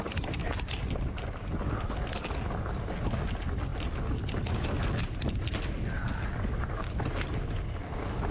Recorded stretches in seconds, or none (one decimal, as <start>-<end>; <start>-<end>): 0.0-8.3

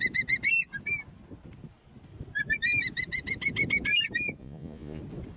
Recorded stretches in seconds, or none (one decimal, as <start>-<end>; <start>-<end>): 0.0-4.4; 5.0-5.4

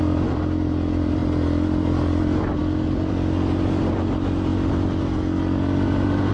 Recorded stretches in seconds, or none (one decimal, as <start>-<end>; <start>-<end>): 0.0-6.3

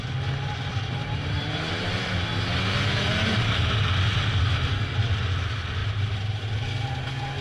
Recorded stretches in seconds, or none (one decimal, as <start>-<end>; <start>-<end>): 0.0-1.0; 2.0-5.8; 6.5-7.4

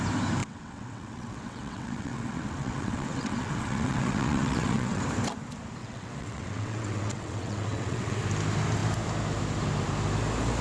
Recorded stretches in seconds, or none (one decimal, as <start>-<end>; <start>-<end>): 0.0-0.4; 5.0-5.8; 8.2-10.6

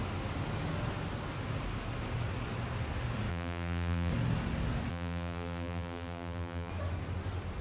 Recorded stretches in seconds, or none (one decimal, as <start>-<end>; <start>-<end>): 0.0-3.3; 4.1-4.9; 6.7-7.6

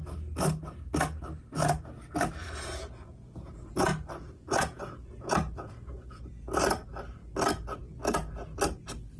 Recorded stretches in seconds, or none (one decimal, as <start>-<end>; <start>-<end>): 0.0-2.4; 6.3-9.2